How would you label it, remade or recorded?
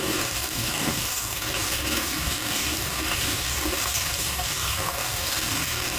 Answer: remade